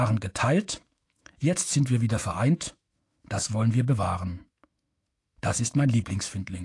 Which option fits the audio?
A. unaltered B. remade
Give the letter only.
B